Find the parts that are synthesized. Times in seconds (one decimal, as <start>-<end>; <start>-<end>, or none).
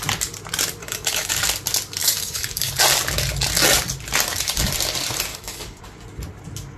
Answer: 0.8-1.3; 2.0-2.7; 5.3-5.8